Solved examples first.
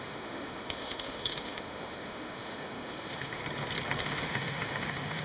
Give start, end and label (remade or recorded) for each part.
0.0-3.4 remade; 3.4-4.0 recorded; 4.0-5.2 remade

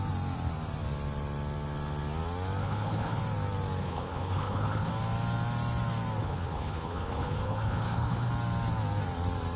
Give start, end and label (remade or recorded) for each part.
0.0-2.6 recorded; 2.6-3.2 remade; 3.2-3.8 recorded; 3.8-4.9 remade; 4.9-6.2 recorded; 6.2-8.3 remade; 8.3-9.6 recorded